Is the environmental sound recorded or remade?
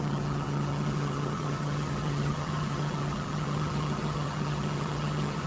remade